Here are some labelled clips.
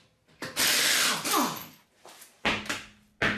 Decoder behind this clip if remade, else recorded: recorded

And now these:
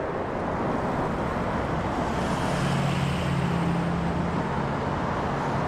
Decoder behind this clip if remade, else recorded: recorded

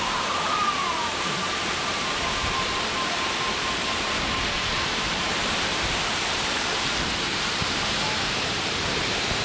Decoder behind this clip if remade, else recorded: remade, vocoder, BigVGAN v2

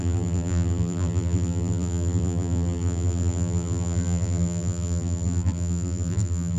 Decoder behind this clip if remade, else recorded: remade, vocoder, BigVGAN v2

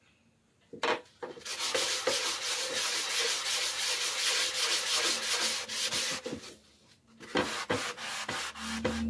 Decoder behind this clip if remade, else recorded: recorded